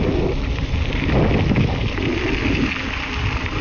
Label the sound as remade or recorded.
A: recorded